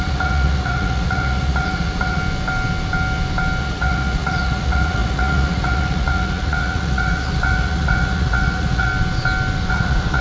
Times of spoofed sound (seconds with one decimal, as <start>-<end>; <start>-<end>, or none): 0.0-2.2; 3.6-8.9; 9.7-10.2